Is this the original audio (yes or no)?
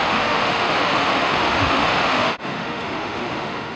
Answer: no